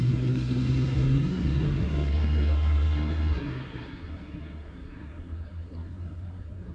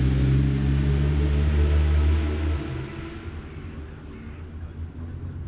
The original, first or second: second